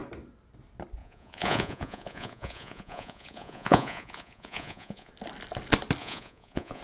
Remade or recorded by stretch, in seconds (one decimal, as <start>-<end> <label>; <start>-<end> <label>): 0.0-1.0 recorded; 1.0-5.1 remade; 5.1-6.0 recorded; 6.0-6.8 remade